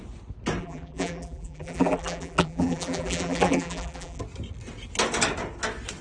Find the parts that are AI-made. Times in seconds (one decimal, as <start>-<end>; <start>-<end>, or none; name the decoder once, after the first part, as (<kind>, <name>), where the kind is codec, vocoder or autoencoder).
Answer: 0.6-4.2 (vocoder, BigVGAN v2)